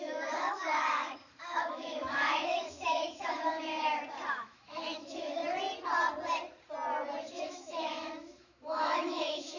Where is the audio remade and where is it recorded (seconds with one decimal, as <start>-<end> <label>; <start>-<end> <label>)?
0.0-3.7 remade; 3.7-4.3 recorded; 4.3-5.4 remade; 5.4-7.2 recorded; 7.2-9.6 remade